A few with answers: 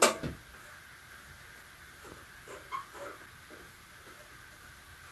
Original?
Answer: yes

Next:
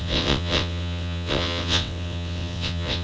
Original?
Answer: no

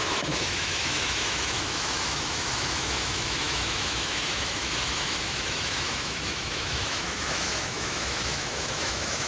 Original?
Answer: no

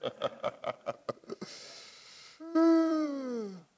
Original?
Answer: no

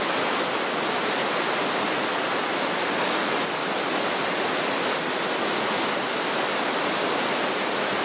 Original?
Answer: yes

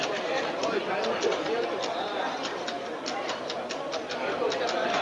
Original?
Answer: yes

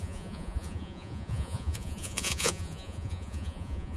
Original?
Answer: no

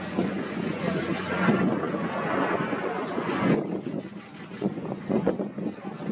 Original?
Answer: no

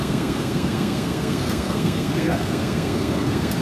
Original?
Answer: no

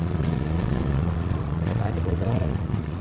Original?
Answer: no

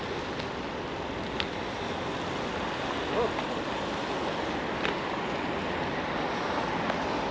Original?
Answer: yes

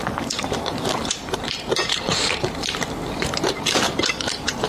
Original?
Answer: no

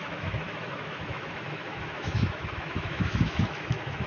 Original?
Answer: no